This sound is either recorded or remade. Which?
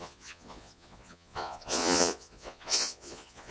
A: remade